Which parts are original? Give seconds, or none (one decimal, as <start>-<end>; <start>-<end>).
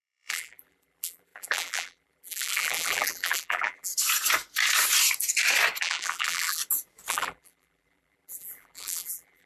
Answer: 3.9-5.8; 6.6-7.1